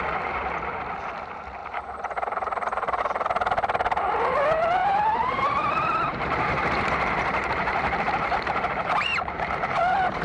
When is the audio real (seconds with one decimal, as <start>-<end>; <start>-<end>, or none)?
0.0-1.6; 3.0-4.8